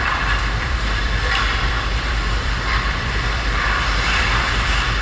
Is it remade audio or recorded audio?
remade